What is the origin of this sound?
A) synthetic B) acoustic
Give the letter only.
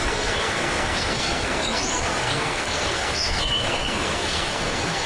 A